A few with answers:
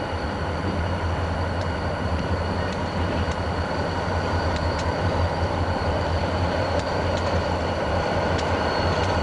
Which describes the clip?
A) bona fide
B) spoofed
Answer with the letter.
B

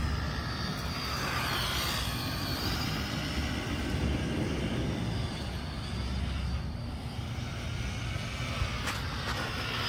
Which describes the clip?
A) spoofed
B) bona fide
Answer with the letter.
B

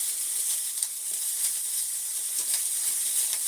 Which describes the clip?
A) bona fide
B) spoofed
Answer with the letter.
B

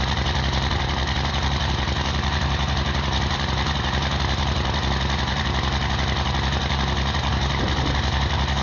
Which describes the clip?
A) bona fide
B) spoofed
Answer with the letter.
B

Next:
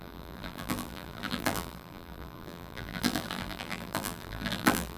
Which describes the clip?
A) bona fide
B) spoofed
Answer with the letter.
B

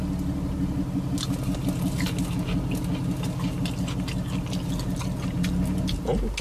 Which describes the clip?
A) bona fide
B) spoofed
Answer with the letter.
A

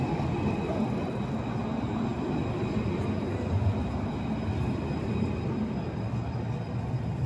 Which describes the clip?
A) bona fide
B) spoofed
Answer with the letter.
A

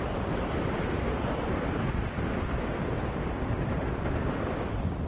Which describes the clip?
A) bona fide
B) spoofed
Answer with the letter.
B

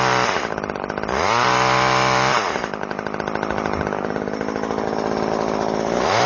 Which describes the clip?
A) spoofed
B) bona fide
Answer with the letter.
A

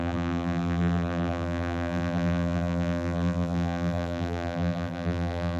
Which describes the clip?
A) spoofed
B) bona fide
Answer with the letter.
A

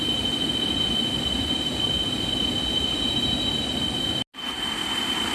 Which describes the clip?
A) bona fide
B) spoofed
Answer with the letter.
A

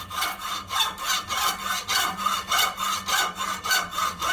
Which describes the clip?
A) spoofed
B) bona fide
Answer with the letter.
B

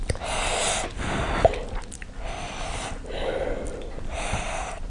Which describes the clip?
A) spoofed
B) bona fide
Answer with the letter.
B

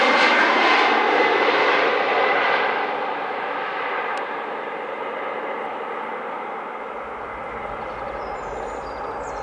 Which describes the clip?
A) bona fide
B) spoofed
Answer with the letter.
A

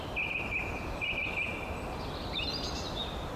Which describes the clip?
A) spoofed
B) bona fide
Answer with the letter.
B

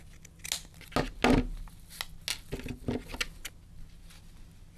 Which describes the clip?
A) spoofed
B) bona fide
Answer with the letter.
B